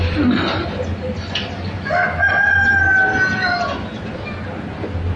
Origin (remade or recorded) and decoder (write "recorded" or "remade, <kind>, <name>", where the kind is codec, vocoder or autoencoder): recorded